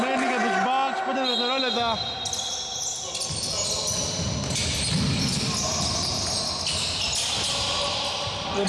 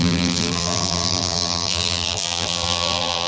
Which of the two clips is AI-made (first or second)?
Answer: second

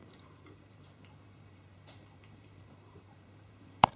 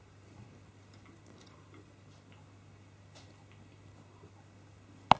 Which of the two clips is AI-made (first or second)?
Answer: first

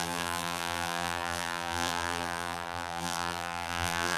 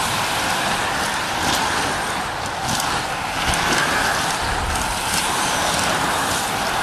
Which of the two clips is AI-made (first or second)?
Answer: first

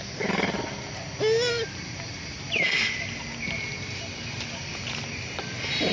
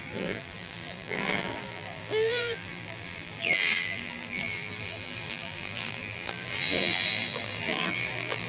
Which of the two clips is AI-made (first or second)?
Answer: second